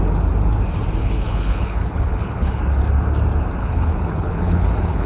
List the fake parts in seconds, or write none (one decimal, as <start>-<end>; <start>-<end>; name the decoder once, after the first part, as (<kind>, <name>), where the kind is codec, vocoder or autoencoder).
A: 1.0-2.6 (codec, HILCodec); 3.6-5.1

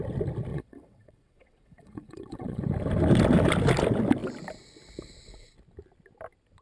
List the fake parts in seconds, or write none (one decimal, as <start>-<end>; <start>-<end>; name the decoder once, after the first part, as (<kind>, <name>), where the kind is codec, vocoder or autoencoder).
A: 0.5-2.6 (vocoder, WaveNeXt)

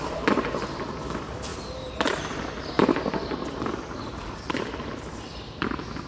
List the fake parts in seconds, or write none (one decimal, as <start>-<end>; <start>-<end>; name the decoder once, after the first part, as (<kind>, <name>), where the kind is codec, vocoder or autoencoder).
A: none

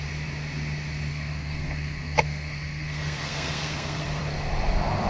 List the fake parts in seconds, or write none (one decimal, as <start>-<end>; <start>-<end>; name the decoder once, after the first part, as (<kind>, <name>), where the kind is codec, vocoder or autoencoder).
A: 1.1-4.2 (codec, SNAC)

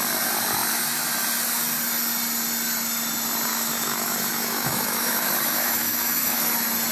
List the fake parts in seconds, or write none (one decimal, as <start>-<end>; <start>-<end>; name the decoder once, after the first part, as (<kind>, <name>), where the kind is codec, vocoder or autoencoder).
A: 3.5-6.4 (autoencoder, DAC-VAE)

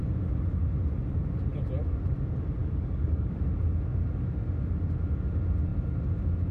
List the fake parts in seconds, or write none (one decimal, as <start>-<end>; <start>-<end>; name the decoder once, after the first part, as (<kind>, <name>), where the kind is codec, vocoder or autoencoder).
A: 2.6-3.4 (codec, DAC)

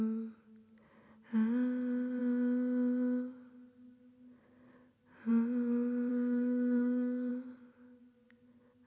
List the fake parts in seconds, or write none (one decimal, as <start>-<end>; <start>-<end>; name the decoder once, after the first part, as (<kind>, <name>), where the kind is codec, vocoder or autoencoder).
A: 6.1-7.3 (codec, SNAC)